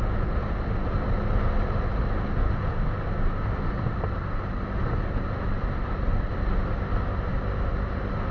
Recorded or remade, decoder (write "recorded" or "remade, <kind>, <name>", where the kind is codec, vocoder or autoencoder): recorded